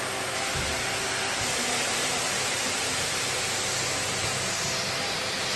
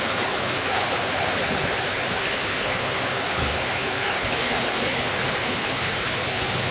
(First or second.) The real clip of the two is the first